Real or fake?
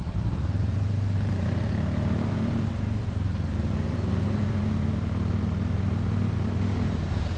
fake